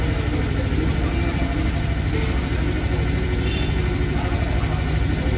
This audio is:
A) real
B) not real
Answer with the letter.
A